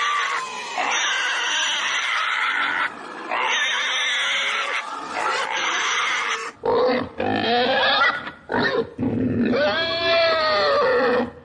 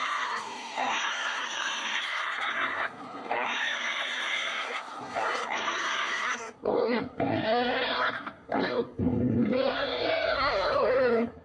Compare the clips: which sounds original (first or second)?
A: first